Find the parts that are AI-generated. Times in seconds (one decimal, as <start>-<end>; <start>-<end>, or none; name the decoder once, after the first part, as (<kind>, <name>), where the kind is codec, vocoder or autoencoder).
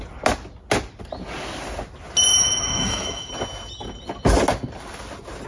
2.3-3.3 (autoencoder, DAC-VAE)